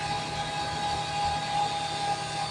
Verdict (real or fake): real